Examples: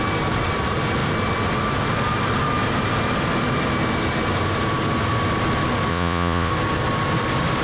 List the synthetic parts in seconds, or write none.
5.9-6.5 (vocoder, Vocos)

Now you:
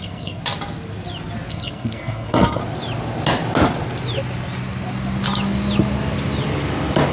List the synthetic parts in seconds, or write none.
0.0-0.4 (codec, SNAC); 1.5-2.6

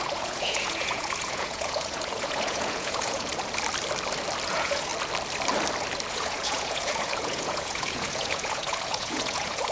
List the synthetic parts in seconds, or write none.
0.0-3.3 (vocoder, Vocos); 4.5-4.9; 6.1-9.7